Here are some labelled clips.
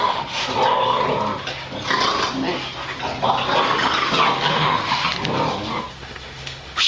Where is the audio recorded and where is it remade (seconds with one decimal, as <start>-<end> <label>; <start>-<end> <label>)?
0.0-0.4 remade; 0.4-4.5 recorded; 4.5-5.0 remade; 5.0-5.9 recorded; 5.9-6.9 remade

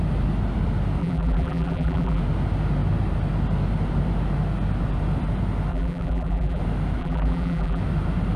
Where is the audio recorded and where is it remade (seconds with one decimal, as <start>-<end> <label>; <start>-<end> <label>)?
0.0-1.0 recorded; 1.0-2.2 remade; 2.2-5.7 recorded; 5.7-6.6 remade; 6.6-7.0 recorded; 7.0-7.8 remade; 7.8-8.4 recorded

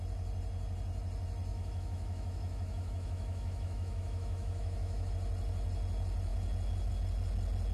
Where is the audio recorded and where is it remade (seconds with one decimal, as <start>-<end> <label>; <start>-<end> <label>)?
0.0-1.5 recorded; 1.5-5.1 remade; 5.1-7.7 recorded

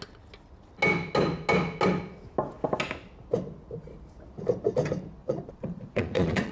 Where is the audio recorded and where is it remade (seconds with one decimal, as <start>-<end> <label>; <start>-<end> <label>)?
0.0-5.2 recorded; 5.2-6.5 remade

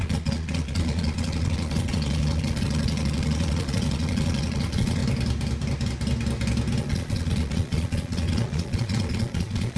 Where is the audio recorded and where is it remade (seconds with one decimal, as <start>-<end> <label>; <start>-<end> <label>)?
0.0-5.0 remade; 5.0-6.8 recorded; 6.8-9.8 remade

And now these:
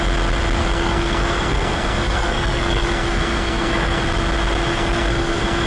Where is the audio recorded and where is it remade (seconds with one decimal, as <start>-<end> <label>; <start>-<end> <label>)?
0.0-0.6 recorded; 0.6-4.0 remade; 4.0-4.7 recorded; 4.7-5.7 remade